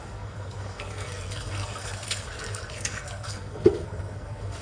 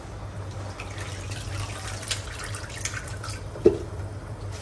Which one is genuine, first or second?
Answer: second